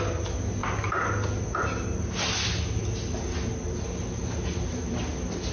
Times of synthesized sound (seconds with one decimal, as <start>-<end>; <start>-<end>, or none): none